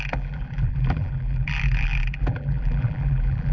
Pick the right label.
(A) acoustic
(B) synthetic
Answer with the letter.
B